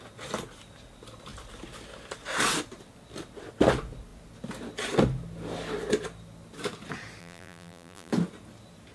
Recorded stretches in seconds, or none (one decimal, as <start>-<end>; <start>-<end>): 0.0-7.2; 8.1-8.9